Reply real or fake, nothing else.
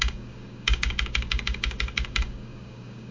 fake